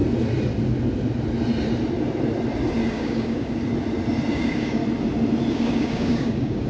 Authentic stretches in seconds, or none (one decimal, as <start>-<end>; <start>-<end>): 0.0-2.9; 3.7-4.3; 4.8-5.5